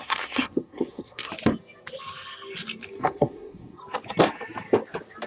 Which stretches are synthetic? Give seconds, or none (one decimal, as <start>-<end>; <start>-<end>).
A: 0.0-1.3; 3.0-3.8